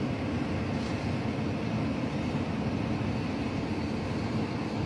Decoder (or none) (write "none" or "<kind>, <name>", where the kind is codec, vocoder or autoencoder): none